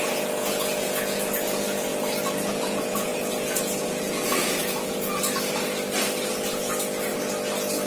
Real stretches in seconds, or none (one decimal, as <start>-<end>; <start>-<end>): 1.9-2.5; 5.2-6.3; 7.1-7.9